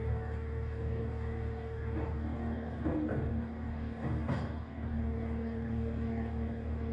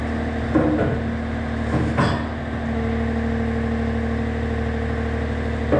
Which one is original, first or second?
second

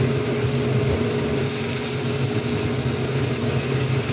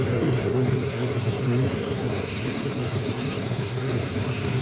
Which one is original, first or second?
first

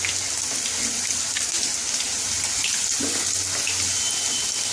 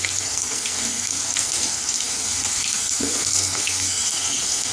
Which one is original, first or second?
first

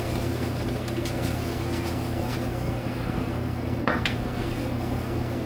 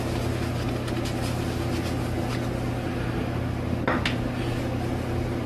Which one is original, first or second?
second